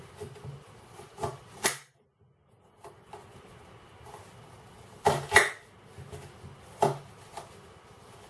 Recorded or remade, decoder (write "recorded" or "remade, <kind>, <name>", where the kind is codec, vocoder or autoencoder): recorded